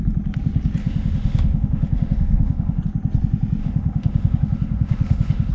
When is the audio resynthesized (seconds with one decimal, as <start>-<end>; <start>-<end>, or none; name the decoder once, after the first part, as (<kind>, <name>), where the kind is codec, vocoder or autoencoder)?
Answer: 0.8-2.8 (autoencoder, DAC-VAE); 3.6-5.5